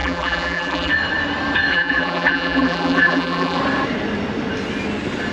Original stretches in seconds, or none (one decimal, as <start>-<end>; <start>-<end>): 0.9-1.7; 3.6-5.3